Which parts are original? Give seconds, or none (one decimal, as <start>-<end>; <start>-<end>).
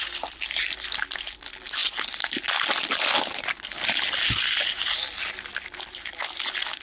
0.0-6.8